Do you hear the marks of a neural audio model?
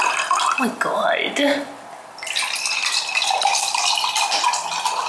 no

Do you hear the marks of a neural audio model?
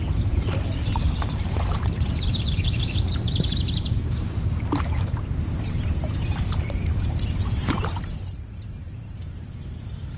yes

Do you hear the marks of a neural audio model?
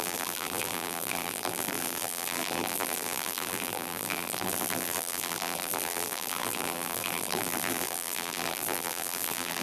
yes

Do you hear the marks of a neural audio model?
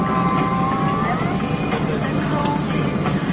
no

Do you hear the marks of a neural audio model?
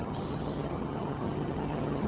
yes